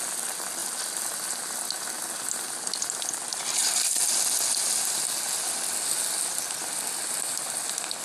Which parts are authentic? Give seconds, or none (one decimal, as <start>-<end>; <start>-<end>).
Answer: 0.0-8.0